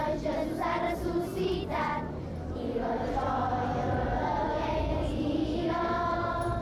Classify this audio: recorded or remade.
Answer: remade